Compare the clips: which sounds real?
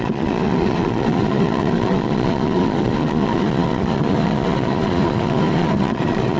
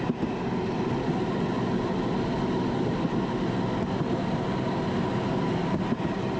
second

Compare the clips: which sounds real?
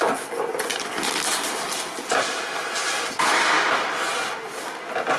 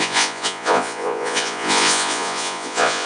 first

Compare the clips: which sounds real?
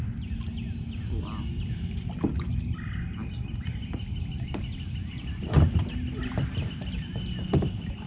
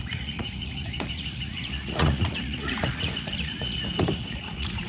first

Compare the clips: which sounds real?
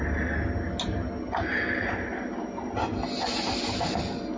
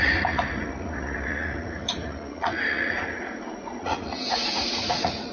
first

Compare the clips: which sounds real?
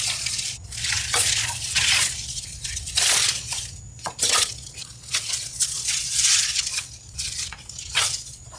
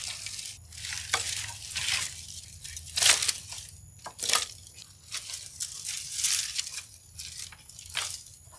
second